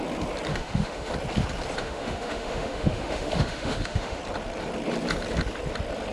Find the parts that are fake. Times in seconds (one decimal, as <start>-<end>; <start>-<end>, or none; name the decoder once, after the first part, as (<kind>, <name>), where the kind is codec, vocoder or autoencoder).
0.5-1.1 (autoencoder, DAC-VAE); 1.8-4.2